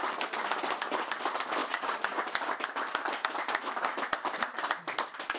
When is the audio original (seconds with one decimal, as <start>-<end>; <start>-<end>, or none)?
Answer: 0.0-1.6; 4.8-5.4